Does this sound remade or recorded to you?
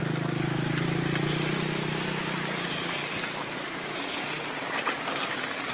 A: recorded